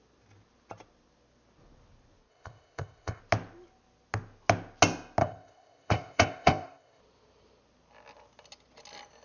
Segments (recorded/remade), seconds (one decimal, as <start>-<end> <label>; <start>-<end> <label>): 0.0-2.3 recorded; 2.3-3.2 remade; 3.2-5.2 recorded; 5.2-7.0 remade; 7.0-9.2 recorded